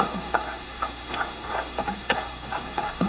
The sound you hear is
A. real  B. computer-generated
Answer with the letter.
B